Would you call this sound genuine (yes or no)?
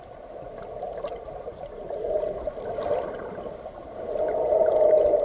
yes